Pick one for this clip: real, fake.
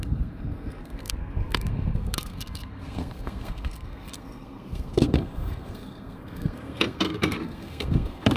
fake